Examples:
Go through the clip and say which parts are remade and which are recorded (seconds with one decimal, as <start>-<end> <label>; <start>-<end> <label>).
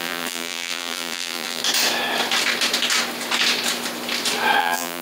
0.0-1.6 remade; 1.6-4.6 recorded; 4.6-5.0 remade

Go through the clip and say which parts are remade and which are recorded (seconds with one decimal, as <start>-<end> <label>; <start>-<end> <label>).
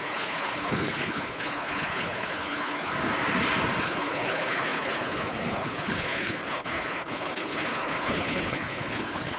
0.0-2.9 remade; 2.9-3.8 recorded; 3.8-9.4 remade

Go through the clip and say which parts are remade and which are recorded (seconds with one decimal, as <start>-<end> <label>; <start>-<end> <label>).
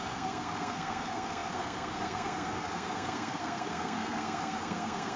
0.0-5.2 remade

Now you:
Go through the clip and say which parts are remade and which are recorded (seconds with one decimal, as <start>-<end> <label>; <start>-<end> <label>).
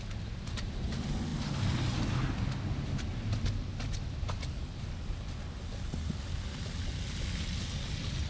0.0-8.3 recorded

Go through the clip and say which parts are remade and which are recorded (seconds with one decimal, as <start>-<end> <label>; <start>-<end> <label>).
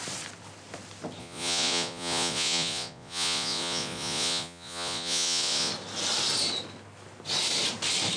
0.0-1.2 recorded; 1.2-5.7 remade; 5.7-8.2 recorded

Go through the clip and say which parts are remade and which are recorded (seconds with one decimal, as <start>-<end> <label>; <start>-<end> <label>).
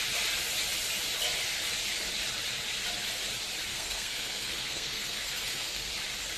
0.0-3.7 recorded; 3.7-5.9 remade; 5.9-6.4 recorded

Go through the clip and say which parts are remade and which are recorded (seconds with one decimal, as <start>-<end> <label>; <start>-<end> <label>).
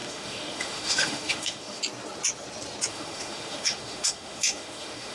0.0-1.8 remade; 1.8-2.9 recorded; 2.9-5.1 remade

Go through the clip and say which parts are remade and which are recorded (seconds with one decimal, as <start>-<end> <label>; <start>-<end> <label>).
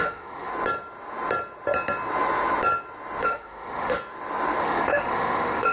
0.0-0.5 remade; 0.5-3.2 recorded; 3.2-4.0 remade; 4.0-4.6 recorded; 4.6-5.7 remade